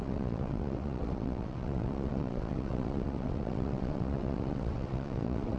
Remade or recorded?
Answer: remade